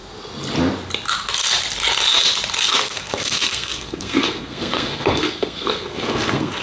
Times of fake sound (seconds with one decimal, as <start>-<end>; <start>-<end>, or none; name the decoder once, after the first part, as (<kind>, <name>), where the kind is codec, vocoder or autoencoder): 2.7-6.6 (codec, SNAC)